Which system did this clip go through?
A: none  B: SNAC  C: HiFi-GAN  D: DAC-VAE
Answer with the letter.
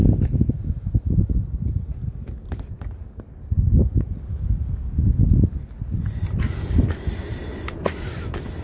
A